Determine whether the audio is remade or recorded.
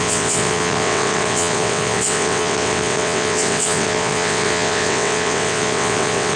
remade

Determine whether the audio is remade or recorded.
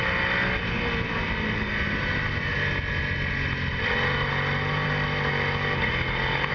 recorded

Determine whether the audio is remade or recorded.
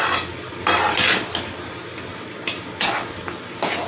recorded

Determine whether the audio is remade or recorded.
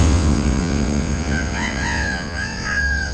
remade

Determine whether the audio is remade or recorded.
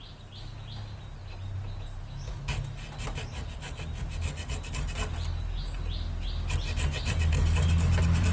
recorded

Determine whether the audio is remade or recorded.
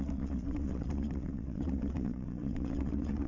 remade